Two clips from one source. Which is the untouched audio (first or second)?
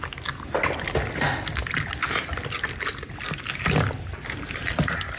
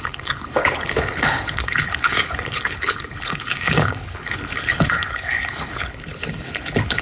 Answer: first